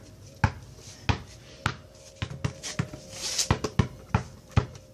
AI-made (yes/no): no